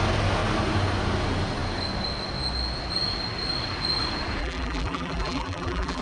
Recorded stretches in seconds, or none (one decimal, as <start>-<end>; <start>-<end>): 0.0-4.4